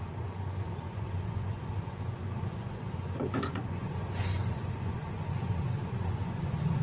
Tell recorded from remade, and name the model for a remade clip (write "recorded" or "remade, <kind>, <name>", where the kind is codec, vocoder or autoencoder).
remade, vocoder, Vocos